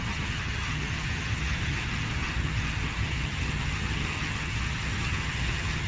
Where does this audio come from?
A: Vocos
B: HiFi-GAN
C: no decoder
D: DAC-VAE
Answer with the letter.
B